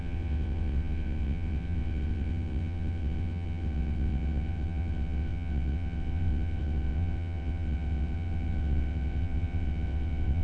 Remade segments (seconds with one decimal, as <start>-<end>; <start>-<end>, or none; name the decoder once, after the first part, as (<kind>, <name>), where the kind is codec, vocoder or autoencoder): 0.0-10.4 (vocoder, WaveNeXt)